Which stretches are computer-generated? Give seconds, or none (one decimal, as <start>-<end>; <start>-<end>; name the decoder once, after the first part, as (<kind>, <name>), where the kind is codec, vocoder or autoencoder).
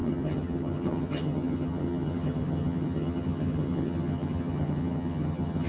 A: 0.0-5.7 (vocoder, HiFi-GAN)